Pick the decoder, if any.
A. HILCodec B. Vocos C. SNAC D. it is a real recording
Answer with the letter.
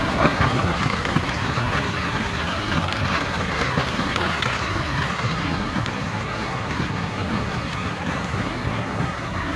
C